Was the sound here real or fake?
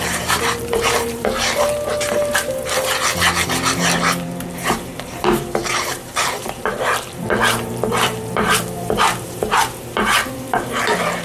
fake